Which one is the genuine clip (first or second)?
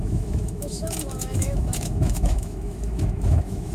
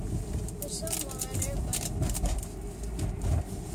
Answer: second